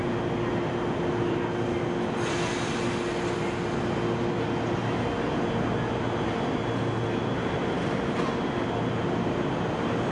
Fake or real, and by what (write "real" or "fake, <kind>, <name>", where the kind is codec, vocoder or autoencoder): real